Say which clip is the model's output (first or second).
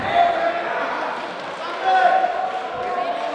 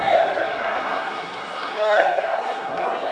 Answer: second